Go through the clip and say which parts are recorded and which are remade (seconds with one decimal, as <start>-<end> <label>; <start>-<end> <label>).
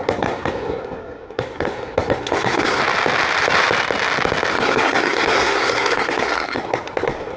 0.0-2.8 remade; 2.8-4.5 recorded; 4.5-7.4 remade